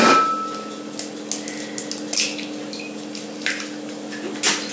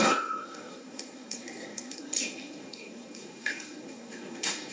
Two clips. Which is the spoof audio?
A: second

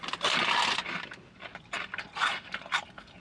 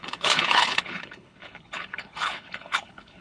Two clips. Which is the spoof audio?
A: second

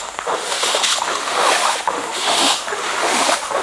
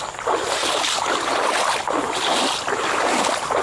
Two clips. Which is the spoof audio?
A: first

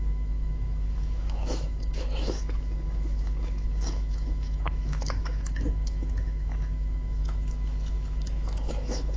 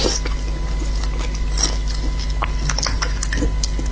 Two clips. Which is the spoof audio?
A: first